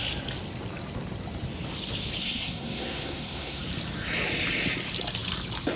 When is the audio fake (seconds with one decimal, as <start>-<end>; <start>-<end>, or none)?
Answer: 2.2-3.6